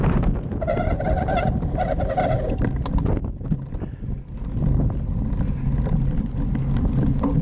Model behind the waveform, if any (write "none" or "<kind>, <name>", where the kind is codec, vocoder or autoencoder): none